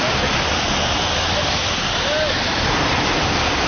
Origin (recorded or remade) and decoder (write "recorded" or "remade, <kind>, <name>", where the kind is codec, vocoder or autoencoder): recorded